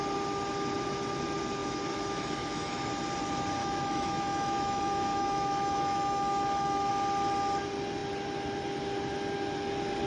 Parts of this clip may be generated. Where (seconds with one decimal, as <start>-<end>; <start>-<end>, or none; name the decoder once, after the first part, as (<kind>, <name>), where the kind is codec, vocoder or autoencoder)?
1.6-2.9 (autoencoder, DAC-VAE); 3.6-6.9

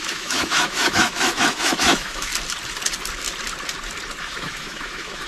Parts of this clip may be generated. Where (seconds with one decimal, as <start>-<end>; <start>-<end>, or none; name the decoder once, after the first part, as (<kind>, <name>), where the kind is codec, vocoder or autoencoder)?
0.0-2.3 (autoencoder, DAC-VAE); 4.2-5.3

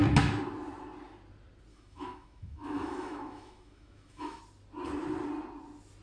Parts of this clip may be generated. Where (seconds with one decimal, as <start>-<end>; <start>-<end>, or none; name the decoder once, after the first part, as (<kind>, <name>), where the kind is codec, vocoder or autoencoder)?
1.7-4.4 (autoencoder, DAC-VAE)

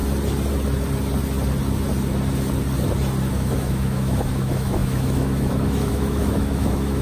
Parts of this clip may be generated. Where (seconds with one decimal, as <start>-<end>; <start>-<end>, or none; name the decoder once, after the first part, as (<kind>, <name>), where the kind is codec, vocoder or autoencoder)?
3.3-7.0 (autoencoder, DAC-VAE)

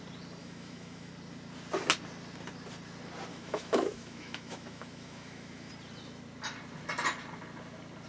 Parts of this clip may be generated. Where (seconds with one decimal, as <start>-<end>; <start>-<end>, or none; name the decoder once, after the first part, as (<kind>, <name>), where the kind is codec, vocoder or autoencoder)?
0.4-1.1 (autoencoder, DAC-VAE); 3.3-5.7

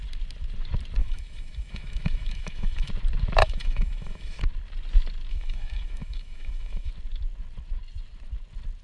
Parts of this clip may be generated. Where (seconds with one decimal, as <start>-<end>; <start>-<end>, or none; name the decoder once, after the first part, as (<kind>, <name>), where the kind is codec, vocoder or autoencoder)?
1.0-2.9 (autoencoder, DAC-VAE); 3.4-4.4; 5.3-6.9

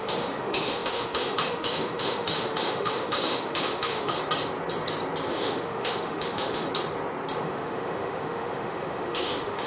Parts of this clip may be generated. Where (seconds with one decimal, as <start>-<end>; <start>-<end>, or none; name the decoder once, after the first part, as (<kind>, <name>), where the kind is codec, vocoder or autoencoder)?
0.0-4.2 (autoencoder, DAC-VAE); 5.3-6.7; 7.4-9.7